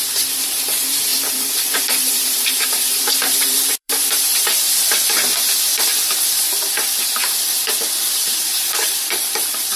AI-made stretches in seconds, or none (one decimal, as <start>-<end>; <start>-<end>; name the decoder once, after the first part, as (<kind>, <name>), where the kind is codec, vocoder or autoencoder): 0.0-5.7 (vocoder, BigVGAN v2); 8.1-9.8